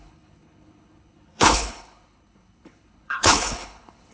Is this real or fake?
fake